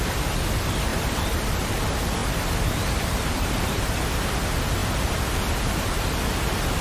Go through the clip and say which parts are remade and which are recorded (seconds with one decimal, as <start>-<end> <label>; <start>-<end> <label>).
0.0-0.9 recorded; 0.9-1.8 remade; 1.8-2.2 recorded; 2.2-3.9 remade; 3.9-6.8 recorded